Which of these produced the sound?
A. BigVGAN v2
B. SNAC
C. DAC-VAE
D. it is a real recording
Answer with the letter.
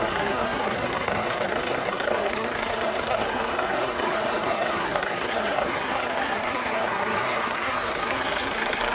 B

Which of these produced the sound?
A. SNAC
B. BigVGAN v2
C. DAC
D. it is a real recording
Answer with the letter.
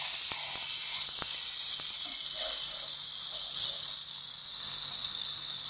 D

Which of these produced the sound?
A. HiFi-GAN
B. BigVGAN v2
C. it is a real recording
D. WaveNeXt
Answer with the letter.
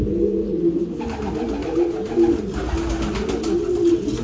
C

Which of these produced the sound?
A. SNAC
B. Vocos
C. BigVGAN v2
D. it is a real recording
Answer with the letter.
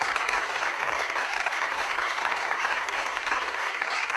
A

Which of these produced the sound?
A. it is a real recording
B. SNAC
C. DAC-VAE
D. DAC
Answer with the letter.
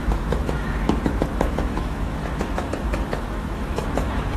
C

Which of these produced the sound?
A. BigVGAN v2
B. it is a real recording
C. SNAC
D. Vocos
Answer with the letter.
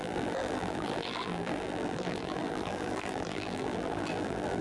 A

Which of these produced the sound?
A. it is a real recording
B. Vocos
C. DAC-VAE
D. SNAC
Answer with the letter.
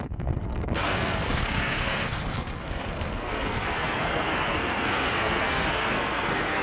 D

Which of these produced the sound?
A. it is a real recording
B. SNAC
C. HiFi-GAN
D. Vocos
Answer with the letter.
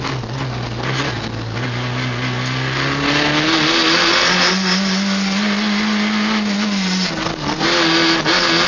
A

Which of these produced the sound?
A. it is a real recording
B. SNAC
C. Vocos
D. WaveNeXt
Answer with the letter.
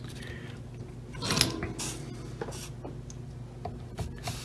A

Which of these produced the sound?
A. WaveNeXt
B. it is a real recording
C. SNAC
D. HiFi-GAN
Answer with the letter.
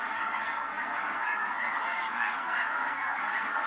C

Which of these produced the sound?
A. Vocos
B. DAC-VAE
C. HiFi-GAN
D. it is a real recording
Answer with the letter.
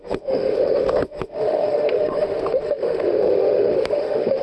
B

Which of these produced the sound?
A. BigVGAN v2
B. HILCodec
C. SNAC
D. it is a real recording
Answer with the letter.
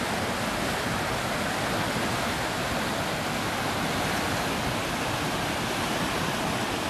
D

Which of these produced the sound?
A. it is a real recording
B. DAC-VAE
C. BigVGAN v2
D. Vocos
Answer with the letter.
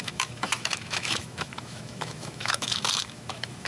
B